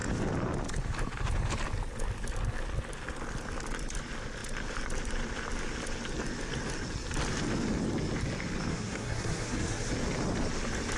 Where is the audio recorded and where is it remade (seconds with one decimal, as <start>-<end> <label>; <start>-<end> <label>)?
0.0-8.7 recorded; 8.7-9.9 remade; 9.9-11.0 recorded